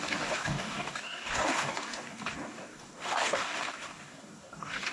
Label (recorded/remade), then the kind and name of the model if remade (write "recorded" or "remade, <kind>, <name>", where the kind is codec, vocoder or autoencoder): remade, codec, DAC